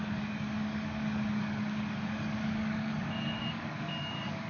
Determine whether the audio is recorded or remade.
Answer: remade